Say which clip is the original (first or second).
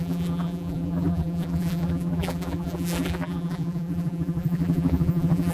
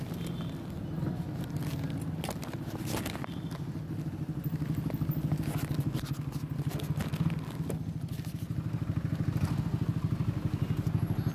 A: second